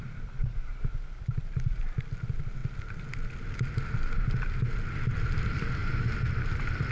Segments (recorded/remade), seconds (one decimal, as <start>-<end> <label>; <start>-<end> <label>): 0.0-6.9 recorded